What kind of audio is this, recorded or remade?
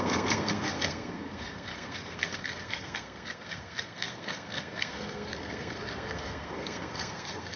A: remade